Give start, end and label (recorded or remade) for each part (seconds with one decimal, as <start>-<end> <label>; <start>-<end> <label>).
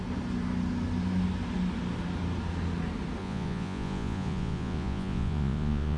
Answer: 0.0-3.2 recorded; 3.2-6.0 remade